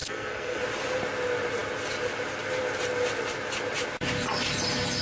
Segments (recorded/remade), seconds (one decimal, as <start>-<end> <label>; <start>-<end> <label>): 0.0-0.6 remade; 0.6-5.0 recorded